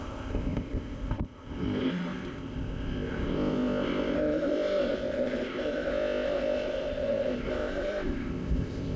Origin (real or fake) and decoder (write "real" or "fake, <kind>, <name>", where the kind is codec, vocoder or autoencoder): fake, codec, ZipCodec